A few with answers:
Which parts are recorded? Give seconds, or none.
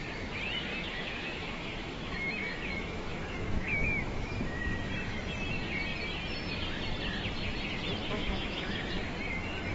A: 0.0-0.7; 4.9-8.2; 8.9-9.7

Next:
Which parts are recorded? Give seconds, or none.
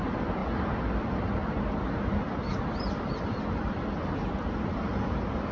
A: 0.0-5.5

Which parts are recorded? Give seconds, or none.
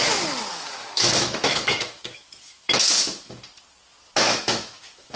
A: 0.0-0.5; 3.4-4.3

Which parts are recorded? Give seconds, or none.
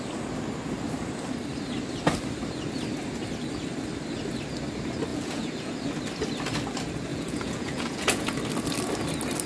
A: 0.0-5.1; 5.7-7.1; 8.4-9.5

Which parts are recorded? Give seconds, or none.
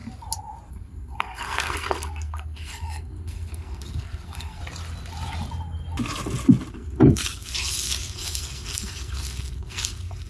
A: 0.0-0.7; 4.6-6.7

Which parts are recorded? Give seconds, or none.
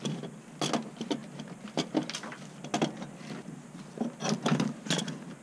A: 0.0-5.4